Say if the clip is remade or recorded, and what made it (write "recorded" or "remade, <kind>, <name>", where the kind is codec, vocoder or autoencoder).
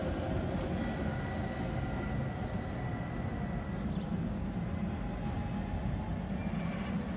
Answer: recorded